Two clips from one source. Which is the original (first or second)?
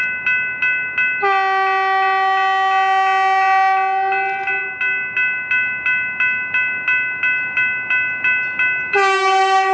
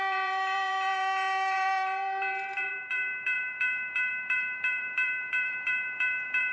first